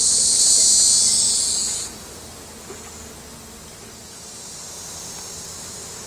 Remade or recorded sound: recorded